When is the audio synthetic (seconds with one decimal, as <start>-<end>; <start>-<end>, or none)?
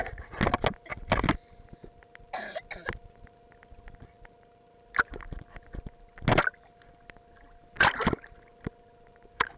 none